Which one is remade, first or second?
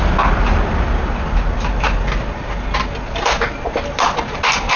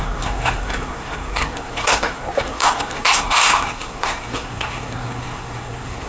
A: second